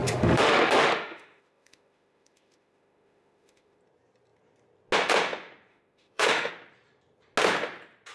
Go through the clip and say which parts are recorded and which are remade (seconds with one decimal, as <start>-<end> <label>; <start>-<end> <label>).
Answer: 0.0-3.8 remade; 3.8-5.7 recorded; 5.7-6.5 remade; 6.5-8.1 recorded